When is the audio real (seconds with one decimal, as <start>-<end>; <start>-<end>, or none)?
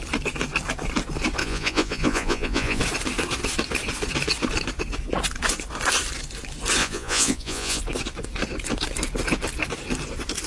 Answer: 0.0-1.4; 2.8-6.8; 7.8-10.5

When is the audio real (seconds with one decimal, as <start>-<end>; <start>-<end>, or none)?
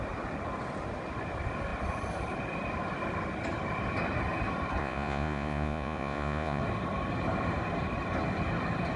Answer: 0.0-4.8; 6.6-9.0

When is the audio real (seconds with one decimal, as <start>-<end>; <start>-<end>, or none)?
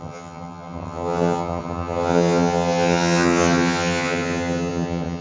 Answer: none